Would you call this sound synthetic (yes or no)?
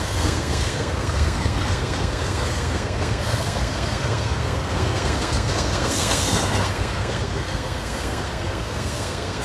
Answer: yes